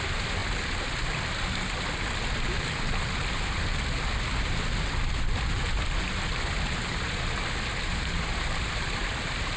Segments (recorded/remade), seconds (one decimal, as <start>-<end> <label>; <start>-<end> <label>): 0.0-0.4 remade; 0.4-3.3 recorded; 3.3-3.7 remade; 3.7-7.8 recorded; 7.8-9.0 remade; 9.0-9.6 recorded